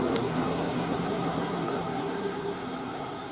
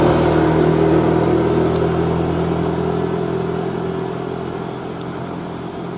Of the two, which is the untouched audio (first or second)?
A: second